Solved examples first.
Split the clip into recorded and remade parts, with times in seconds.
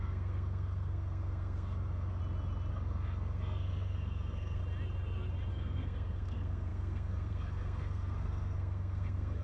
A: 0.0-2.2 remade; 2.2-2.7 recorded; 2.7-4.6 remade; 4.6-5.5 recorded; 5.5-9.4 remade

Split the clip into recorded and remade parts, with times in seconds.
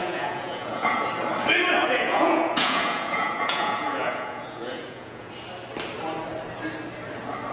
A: 0.0-1.1 remade; 1.1-1.8 recorded; 1.8-5.3 remade; 5.3-7.5 recorded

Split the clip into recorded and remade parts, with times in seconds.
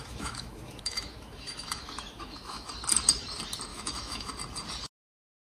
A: 0.0-2.7 remade; 2.7-3.7 recorded; 3.7-4.3 remade; 4.3-5.5 recorded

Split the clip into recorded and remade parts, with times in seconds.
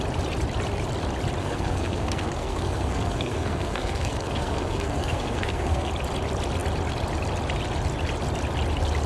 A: 0.0-1.4 recorded; 1.4-5.9 remade; 5.9-9.1 recorded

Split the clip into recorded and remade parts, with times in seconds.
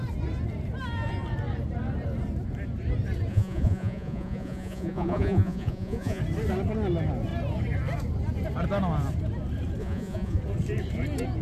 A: 0.0-3.3 recorded; 3.3-6.2 remade; 6.2-9.8 recorded; 9.8-10.4 remade; 10.4-11.4 recorded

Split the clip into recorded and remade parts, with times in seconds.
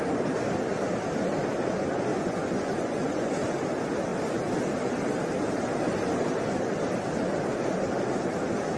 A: 0.0-2.1 recorded; 2.1-3.3 remade; 3.3-8.8 recorded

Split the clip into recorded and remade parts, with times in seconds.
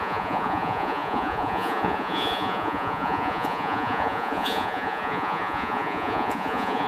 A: 0.0-6.9 remade